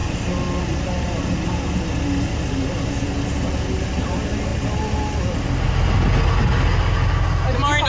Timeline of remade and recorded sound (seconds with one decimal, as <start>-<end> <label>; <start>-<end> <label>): 0.0-7.9 recorded